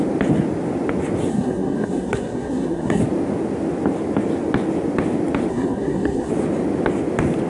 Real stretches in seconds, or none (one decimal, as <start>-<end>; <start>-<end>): 0.0-1.3; 3.0-5.5; 6.3-7.5